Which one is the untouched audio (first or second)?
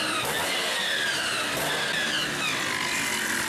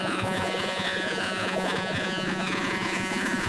first